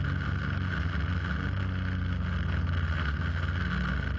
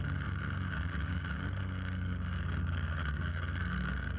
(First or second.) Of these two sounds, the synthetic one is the second